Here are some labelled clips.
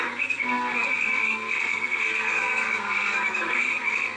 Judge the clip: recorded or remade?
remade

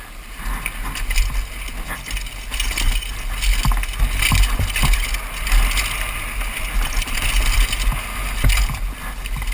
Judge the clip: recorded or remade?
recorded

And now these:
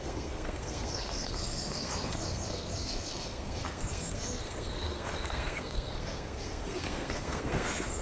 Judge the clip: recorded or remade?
remade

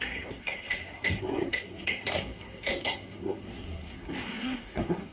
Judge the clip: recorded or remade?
remade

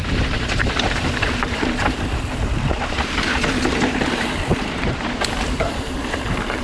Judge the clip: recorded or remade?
remade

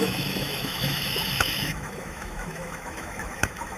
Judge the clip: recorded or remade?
remade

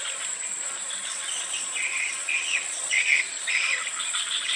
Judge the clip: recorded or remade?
remade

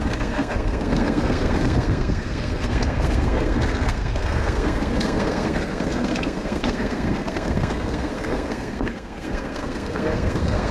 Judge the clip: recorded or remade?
remade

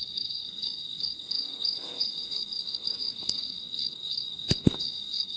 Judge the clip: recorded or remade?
remade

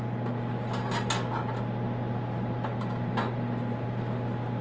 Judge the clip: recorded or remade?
recorded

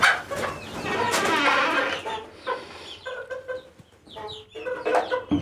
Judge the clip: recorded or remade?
recorded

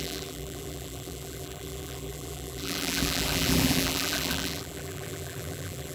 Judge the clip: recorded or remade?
remade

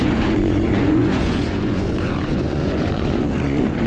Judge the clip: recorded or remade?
remade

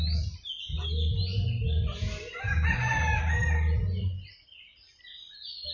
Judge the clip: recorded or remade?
recorded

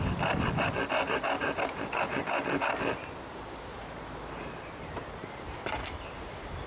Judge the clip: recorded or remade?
recorded